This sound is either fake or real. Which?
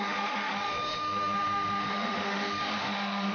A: fake